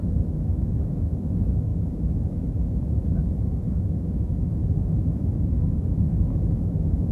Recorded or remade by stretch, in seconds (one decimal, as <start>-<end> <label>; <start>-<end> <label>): 0.0-7.1 remade